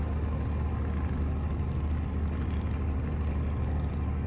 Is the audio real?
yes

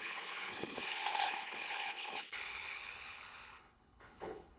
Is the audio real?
no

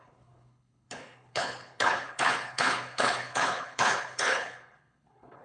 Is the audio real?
no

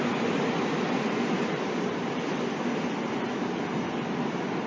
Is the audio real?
yes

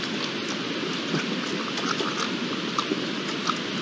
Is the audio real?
yes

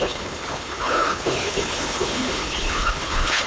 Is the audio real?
no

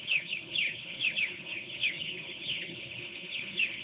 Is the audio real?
no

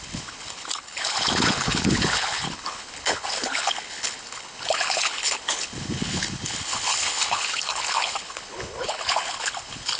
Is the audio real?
no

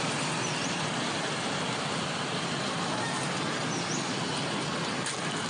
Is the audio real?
yes